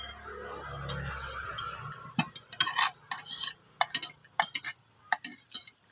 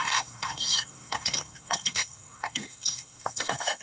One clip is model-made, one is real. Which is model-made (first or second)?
second